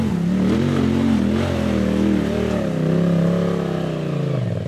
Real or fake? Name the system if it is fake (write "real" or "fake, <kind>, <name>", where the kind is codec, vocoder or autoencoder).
real